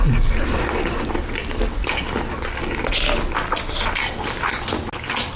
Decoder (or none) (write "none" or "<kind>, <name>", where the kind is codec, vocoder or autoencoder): none